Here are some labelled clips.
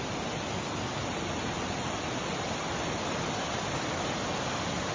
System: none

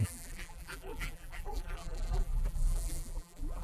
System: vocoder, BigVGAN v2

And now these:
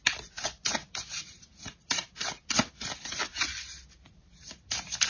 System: none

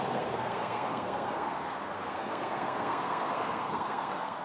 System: codec, SNAC